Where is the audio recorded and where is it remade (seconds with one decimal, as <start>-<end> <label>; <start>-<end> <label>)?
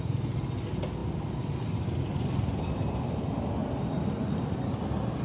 0.0-5.2 recorded